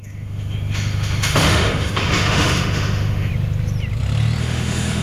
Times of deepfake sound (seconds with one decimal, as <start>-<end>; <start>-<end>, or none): 0.0-3.3; 4.4-5.0